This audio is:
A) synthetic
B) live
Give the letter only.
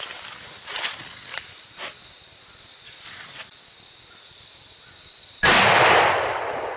A